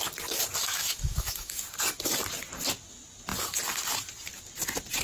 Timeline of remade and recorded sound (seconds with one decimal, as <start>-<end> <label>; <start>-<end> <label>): 0.0-0.6 recorded; 0.6-1.6 remade; 1.6-5.0 recorded